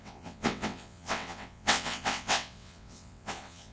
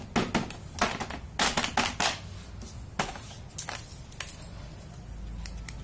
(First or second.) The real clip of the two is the second